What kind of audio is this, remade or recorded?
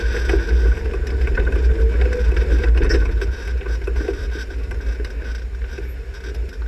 recorded